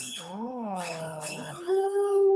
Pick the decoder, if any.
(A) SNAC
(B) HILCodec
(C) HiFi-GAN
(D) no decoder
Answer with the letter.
B